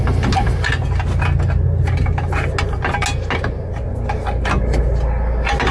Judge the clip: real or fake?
real